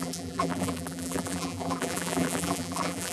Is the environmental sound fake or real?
fake